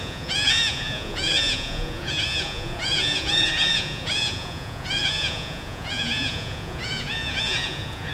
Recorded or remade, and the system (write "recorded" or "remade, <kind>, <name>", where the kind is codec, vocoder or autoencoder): remade, vocoder, Vocos